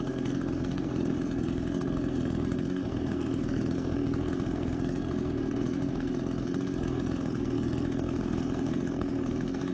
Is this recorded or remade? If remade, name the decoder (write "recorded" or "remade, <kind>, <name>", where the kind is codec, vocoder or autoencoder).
remade, codec, SNAC